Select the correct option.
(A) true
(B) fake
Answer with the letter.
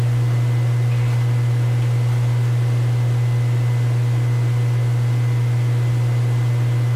A